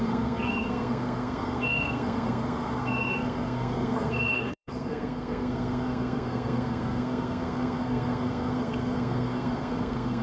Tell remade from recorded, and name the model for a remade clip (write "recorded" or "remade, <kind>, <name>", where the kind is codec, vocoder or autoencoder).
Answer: remade, codec, SNAC